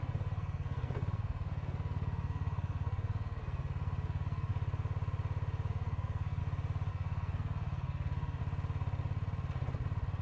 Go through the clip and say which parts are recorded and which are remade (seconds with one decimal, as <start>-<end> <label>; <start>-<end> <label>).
0.0-4.5 remade; 4.5-5.7 recorded; 5.7-6.4 remade; 6.4-6.9 recorded; 6.9-8.4 remade; 8.4-10.2 recorded